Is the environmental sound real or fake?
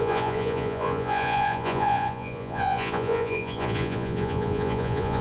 fake